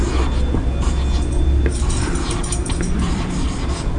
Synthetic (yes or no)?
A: no